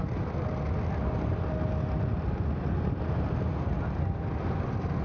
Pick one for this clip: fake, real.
real